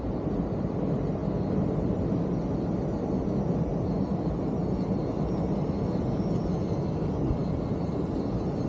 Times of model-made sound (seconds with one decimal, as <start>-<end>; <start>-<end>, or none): none